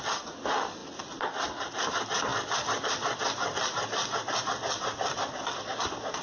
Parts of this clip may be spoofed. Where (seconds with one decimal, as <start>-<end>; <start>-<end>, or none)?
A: none